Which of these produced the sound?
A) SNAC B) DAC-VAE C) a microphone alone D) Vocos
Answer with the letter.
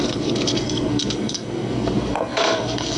A